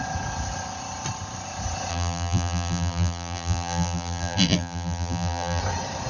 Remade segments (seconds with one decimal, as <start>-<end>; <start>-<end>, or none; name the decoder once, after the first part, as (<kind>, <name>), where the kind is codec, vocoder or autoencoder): 1.9-5.6 (vocoder, BigVGAN v2)